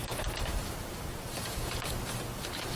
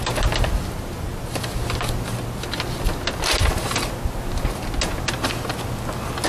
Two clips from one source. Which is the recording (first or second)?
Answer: second